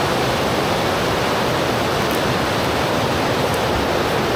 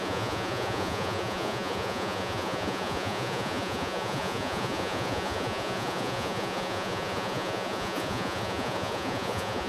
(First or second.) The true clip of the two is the first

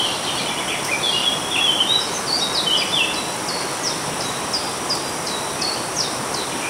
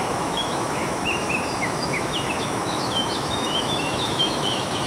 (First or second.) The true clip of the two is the first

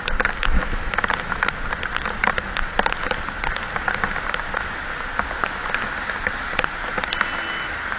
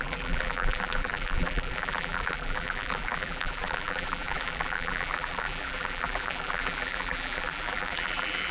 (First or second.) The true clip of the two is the first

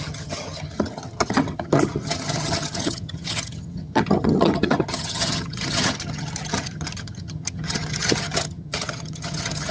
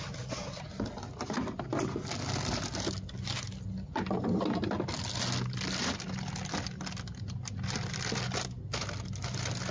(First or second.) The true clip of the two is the second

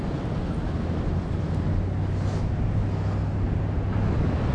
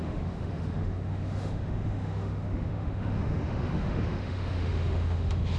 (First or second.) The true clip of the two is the first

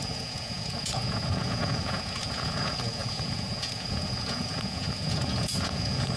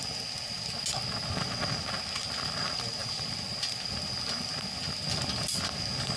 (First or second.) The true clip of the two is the second